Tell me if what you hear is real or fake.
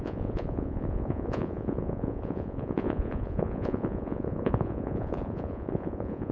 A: fake